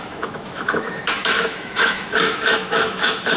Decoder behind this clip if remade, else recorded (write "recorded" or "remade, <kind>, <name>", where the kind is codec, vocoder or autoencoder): remade, autoencoder, DAC-VAE